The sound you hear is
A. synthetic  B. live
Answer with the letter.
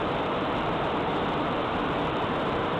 A